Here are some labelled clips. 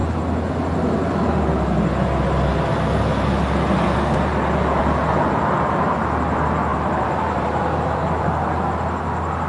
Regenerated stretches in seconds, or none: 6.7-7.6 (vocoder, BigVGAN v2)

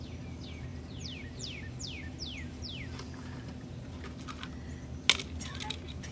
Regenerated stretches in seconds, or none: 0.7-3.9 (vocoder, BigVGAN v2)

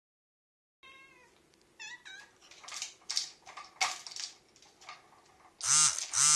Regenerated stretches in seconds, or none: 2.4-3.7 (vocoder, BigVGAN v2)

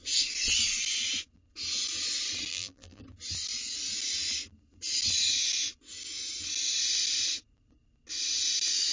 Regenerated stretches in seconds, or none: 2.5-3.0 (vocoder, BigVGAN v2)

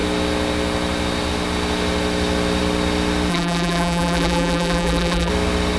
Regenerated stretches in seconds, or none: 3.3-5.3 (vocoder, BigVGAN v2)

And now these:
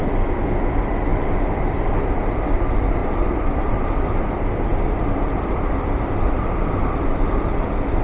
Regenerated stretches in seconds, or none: 3.0-3.9 (vocoder, BigVGAN v2); 4.7-5.7